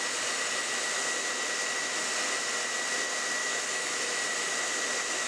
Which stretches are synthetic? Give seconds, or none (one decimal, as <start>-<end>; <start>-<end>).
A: 3.4-4.2